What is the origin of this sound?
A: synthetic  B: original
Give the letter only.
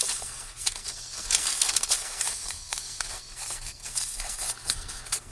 A